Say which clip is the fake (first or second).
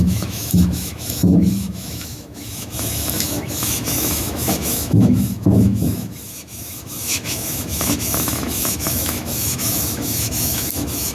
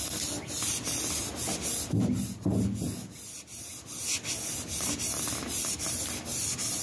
first